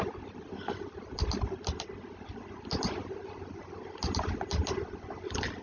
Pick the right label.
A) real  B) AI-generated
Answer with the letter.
A